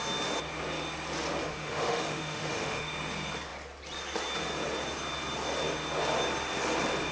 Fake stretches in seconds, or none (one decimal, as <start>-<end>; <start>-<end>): 1.4-2.9